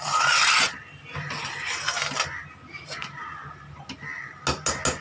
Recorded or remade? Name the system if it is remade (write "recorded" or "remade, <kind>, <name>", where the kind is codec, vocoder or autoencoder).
recorded